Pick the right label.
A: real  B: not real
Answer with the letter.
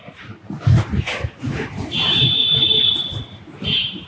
B